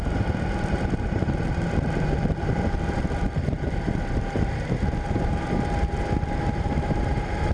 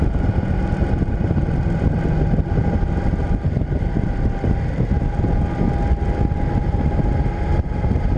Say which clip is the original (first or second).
second